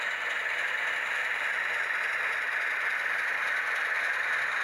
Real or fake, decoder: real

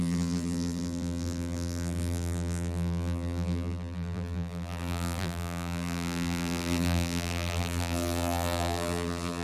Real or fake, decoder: fake, vocoder, BigVGAN v2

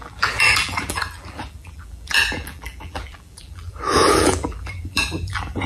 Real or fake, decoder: fake, vocoder, BigVGAN v2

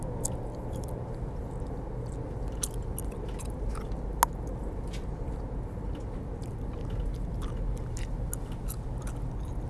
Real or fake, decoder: real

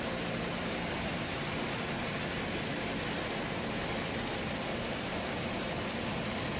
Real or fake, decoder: real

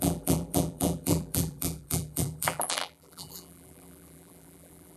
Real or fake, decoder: fake, vocoder, BigVGAN v2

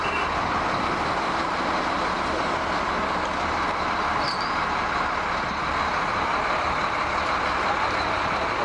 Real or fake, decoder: real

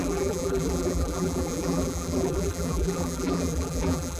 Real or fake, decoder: fake, vocoder, BigVGAN v2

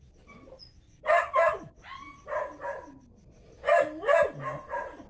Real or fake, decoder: real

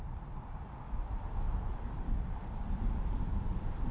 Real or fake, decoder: real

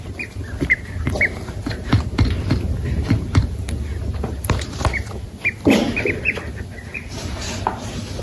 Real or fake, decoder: fake, vocoder, BigVGAN v2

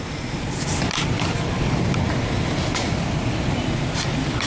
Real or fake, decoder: real